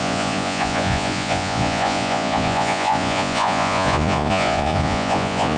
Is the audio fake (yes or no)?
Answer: yes